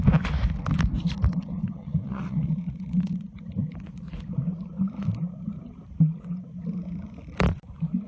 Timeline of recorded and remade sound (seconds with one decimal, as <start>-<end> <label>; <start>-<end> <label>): 0.0-1.3 recorded; 1.3-3.2 remade; 3.2-8.1 recorded